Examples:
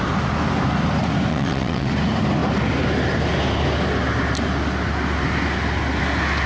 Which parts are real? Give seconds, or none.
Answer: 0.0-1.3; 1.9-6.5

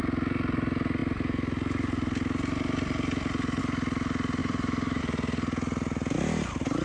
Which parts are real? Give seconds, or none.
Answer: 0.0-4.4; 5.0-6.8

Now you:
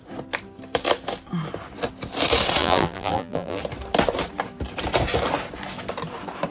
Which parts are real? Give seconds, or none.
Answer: 0.0-2.6; 3.6-6.5

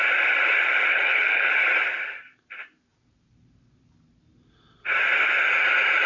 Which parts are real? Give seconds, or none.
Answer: 0.0-0.9; 1.5-6.1

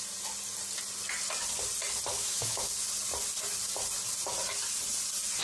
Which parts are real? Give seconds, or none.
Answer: 0.0-2.1; 2.7-5.4